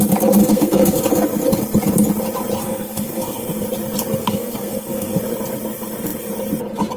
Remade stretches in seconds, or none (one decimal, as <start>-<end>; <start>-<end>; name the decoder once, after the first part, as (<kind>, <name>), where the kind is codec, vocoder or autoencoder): 0.4-1.0 (codec, SNAC); 2.6-3.6; 4.2-5.2